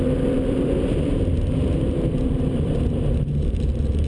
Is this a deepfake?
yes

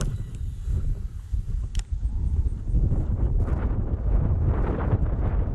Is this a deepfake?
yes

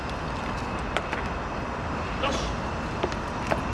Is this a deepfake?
no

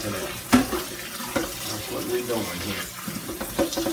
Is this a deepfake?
no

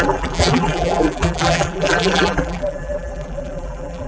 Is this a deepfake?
yes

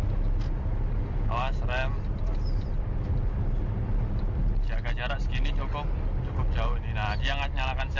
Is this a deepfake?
no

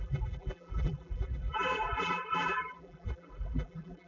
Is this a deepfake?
yes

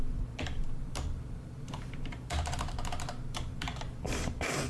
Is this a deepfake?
yes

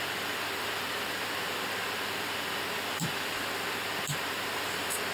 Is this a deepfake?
yes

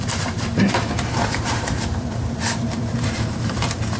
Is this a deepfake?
yes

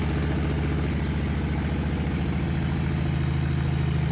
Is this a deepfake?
no